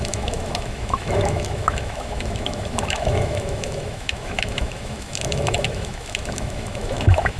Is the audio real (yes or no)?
no